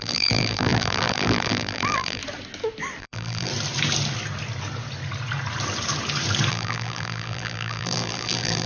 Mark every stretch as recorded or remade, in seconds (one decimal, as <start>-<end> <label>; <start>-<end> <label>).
0.0-2.2 remade; 2.2-3.0 recorded; 3.0-3.5 remade; 3.5-6.5 recorded; 6.5-8.7 remade